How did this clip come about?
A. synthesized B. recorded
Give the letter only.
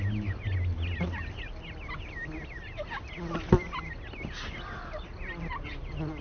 B